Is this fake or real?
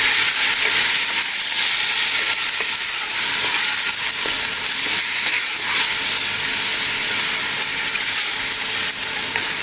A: real